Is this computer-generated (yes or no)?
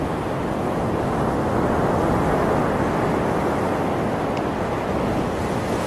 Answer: no